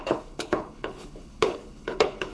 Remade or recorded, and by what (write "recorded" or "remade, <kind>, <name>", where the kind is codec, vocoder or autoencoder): remade, codec, HILCodec